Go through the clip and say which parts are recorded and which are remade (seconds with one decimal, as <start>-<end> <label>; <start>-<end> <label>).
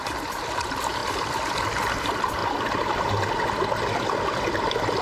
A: 0.0-1.0 remade; 1.0-2.0 recorded; 2.0-2.4 remade; 2.4-5.0 recorded